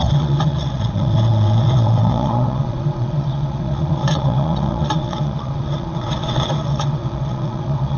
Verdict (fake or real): fake